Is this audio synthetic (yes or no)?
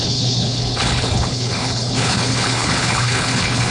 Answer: yes